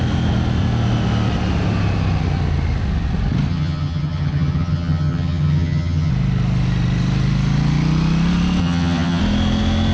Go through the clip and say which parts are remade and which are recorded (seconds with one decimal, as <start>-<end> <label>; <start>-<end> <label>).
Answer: 0.0-3.5 recorded; 3.5-6.1 remade; 6.1-8.6 recorded; 8.6-9.2 remade; 9.2-9.9 recorded